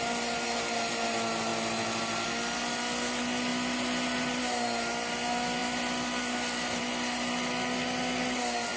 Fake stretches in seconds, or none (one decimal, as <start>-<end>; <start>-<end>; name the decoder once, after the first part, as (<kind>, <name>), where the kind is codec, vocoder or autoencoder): none